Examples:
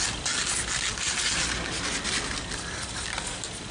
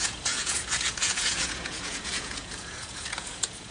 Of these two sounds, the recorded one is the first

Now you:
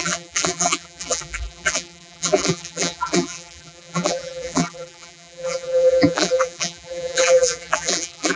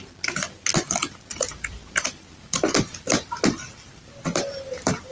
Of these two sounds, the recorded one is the second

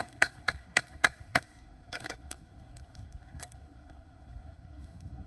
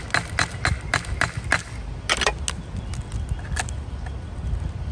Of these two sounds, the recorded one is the second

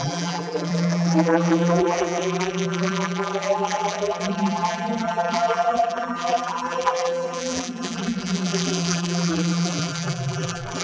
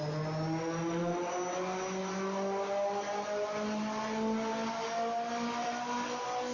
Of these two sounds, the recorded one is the second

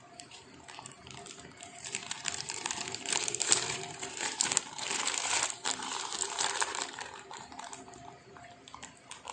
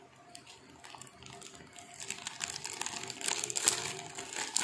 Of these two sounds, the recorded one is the second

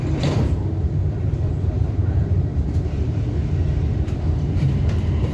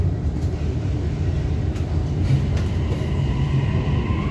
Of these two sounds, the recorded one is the second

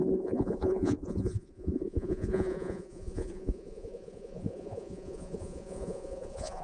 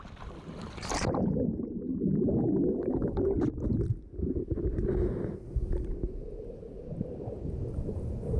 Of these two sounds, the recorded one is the second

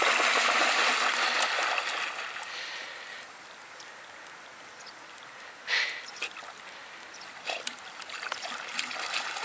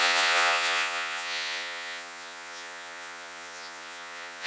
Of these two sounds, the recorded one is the first